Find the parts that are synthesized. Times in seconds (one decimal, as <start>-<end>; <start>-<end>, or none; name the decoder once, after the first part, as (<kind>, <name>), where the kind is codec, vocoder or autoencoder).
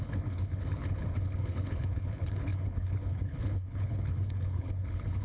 0.0-5.2 (codec, HILCodec)